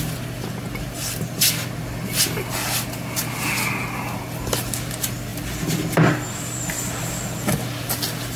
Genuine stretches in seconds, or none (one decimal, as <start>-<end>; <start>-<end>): 0.0-8.4